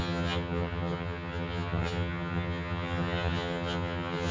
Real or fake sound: fake